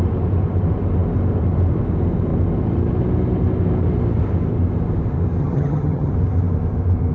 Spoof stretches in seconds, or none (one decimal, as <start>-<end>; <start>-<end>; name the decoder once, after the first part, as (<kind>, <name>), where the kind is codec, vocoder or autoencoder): 5.4-6.1 (vocoder, HiFi-GAN)